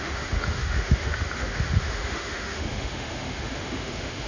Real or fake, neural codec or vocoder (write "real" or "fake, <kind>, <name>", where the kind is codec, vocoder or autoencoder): fake, autoencoder, DAC-VAE